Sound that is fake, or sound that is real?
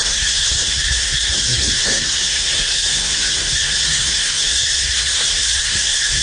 fake